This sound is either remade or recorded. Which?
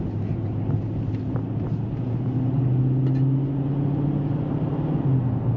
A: recorded